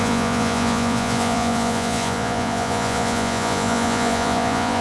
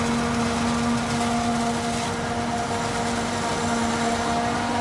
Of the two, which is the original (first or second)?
second